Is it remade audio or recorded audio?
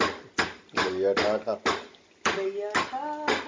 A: recorded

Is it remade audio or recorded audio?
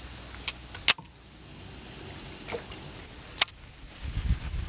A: recorded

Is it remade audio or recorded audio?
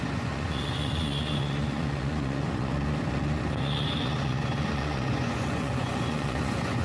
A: remade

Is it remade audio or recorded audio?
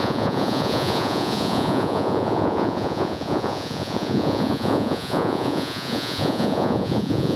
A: remade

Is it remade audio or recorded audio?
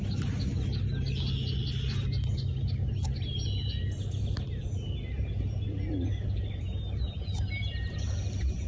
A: recorded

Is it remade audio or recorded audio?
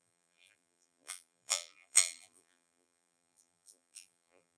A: remade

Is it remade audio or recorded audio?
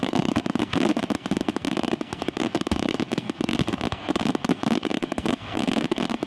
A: remade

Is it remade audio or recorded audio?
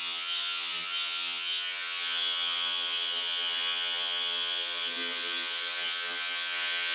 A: remade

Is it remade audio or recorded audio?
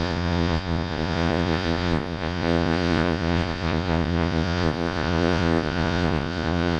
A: remade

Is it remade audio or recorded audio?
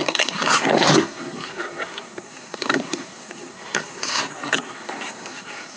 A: remade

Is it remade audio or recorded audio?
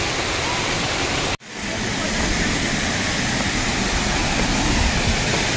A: recorded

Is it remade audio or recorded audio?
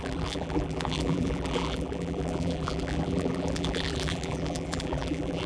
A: remade